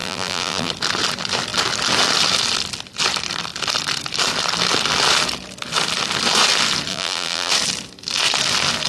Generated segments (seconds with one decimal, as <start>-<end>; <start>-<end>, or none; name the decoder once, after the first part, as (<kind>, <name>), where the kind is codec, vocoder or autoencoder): 0.0-0.7 (vocoder, BigVGAN v2); 6.9-7.5